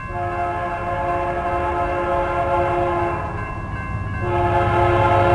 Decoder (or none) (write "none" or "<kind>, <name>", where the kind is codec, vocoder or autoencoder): none